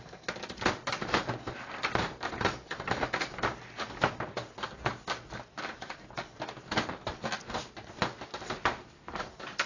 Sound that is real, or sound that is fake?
real